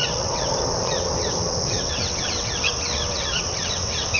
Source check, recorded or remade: remade